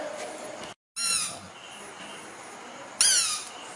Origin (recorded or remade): recorded